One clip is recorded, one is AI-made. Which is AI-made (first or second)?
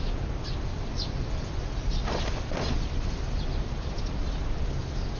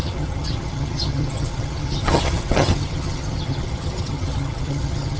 second